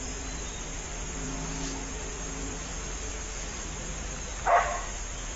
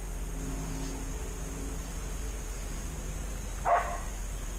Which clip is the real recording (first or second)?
second